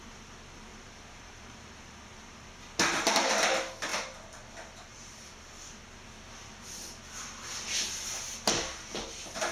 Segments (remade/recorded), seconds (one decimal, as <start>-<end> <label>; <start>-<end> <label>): 0.0-0.7 recorded; 0.7-2.5 remade; 2.5-4.9 recorded; 4.9-5.4 remade; 5.4-9.5 recorded